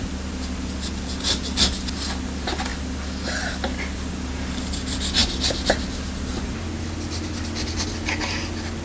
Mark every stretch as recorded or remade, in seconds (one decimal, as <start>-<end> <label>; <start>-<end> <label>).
0.0-8.8 recorded